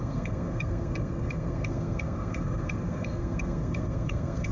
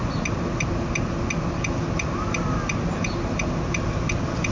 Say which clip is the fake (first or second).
first